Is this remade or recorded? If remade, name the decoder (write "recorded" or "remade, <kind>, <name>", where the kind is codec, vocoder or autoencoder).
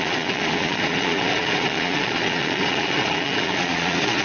remade, vocoder, Vocos